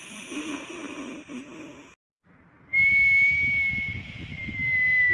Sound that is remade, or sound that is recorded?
recorded